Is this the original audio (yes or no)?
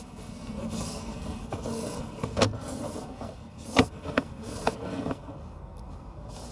no